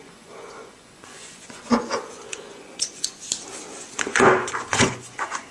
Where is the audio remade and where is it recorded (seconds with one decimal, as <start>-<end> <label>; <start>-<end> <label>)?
0.0-3.3 remade; 3.3-4.0 recorded; 4.0-5.5 remade